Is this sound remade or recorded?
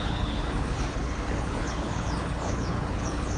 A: remade